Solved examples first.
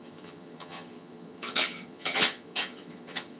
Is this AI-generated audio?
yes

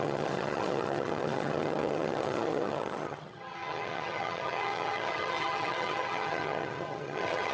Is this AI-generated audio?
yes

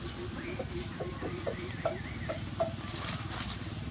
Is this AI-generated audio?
no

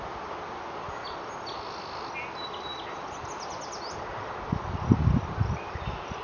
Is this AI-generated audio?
no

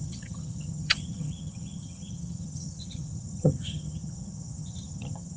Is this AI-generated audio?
yes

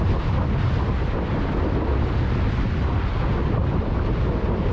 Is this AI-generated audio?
no